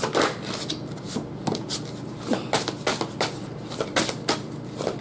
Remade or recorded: recorded